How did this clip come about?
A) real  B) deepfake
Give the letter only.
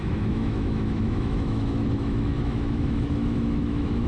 B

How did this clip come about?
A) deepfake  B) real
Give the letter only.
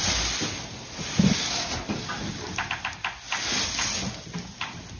B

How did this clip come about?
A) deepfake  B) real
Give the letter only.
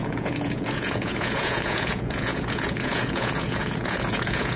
A